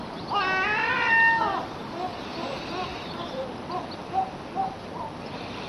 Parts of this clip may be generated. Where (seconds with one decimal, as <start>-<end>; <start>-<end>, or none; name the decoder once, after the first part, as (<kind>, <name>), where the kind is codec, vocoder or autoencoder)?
2.9-3.6 (vocoder, BigVGAN v2)